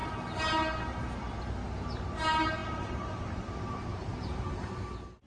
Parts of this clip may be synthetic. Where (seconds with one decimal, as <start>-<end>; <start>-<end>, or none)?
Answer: 2.6-4.7